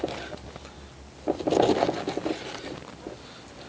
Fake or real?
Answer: real